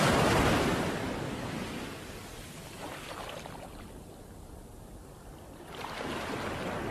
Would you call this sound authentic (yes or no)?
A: yes